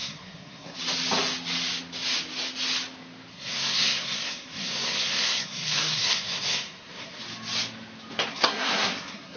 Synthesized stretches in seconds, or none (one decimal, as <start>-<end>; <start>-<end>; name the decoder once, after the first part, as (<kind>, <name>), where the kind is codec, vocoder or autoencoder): 0.0-0.8 (codec, SNAC); 3.3-7.2; 8.3-9.4